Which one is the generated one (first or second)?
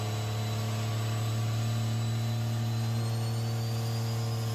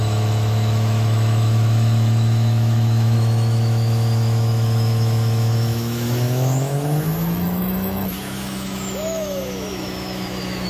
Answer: second